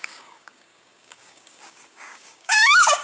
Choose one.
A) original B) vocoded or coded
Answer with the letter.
B